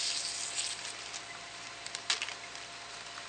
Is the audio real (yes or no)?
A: yes